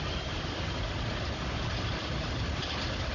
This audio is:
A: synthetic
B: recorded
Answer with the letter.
B